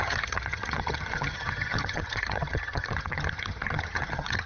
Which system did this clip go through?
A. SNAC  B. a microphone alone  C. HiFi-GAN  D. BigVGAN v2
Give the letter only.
C